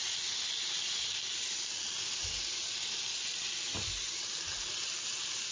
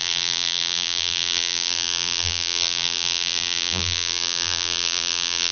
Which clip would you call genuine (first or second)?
first